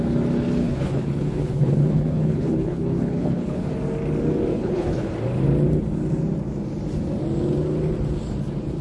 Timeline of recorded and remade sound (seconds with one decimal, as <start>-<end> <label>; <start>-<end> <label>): 0.0-0.6 recorded; 0.6-3.7 remade; 3.7-4.5 recorded; 4.5-5.1 remade; 5.1-8.8 recorded